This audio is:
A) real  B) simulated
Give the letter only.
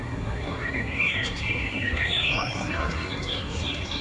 B